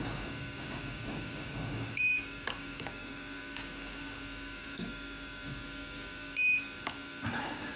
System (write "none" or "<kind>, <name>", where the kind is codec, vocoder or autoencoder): codec, DAC